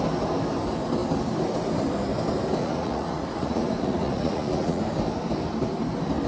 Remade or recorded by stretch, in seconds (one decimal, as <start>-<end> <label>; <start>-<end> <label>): 0.0-2.6 recorded; 2.6-4.8 remade; 4.8-6.3 recorded